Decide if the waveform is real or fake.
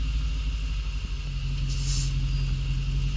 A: real